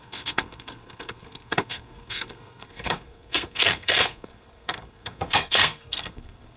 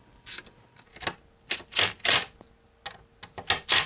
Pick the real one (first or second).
second